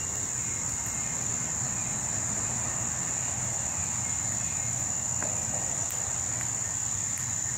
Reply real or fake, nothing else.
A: real